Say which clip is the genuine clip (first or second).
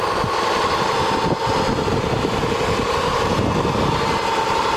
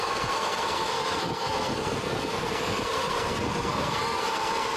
first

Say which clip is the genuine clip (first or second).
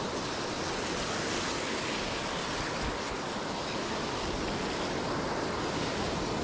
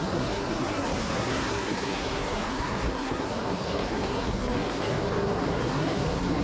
first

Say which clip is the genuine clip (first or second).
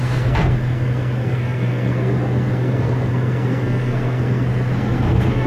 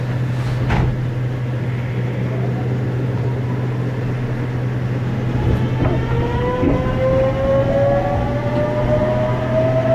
second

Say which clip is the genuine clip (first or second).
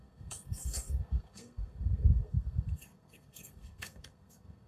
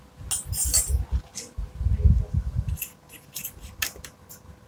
second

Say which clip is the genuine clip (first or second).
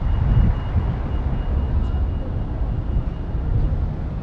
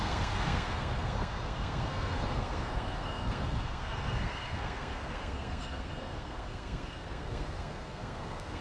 first